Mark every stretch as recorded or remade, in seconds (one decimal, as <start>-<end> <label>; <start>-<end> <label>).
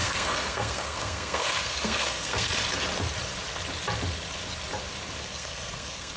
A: 0.0-2.5 remade; 2.5-5.2 recorded; 5.2-6.2 remade